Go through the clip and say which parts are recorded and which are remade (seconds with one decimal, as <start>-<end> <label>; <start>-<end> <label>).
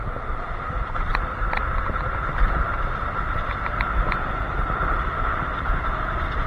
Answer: 0.0-6.5 recorded